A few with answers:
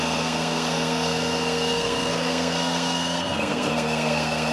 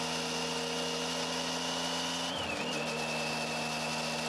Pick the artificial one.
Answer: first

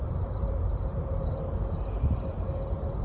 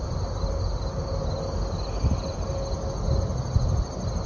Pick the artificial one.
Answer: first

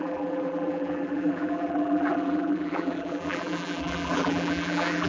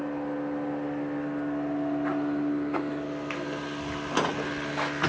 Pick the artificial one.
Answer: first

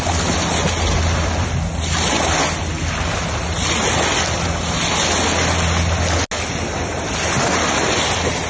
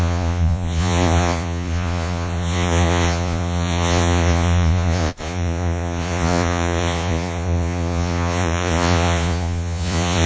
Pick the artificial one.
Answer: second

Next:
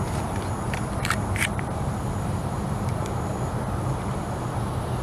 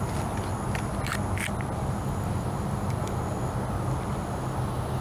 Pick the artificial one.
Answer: first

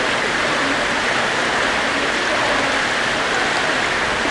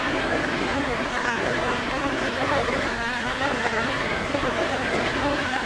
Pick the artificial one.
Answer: second